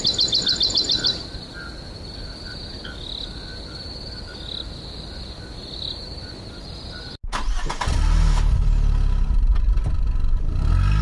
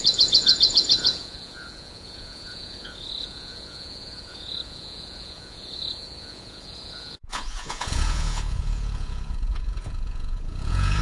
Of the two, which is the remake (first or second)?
second